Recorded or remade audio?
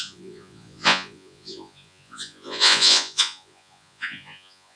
remade